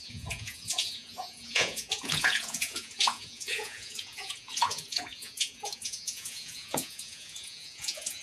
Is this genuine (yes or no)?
no